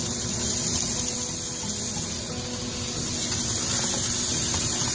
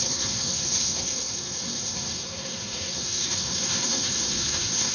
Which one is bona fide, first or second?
first